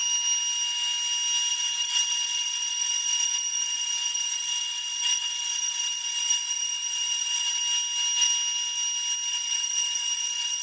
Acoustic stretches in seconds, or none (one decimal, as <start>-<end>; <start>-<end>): 0.0-1.5; 7.6-9.3